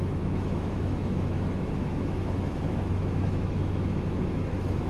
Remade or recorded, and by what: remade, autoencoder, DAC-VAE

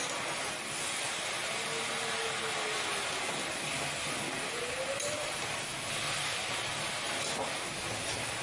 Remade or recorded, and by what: recorded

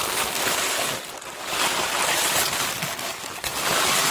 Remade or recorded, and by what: recorded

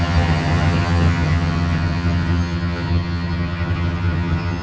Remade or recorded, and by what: remade, vocoder, HiFi-GAN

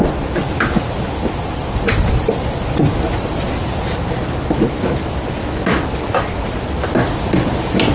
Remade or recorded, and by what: recorded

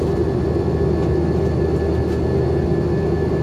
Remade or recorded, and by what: recorded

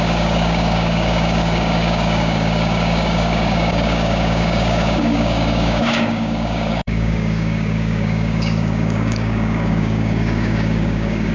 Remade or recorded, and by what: remade, codec, DAC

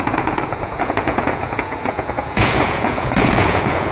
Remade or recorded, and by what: remade, vocoder, Vocos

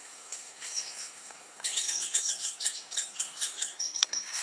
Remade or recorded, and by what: remade, codec, SNAC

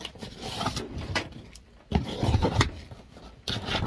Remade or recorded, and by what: recorded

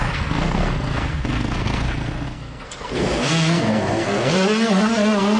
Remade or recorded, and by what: remade, codec, SNAC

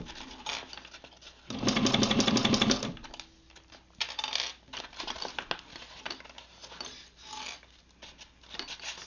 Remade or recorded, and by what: recorded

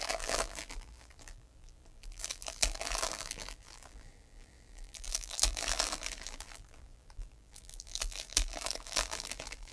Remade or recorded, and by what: remade, vocoder, BigVGAN v2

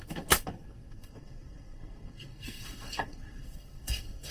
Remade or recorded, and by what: remade, codec, SNAC